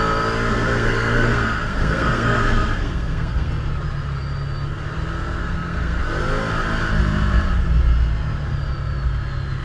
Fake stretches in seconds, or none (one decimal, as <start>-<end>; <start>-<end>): 0.5-3.5; 5.4-6.0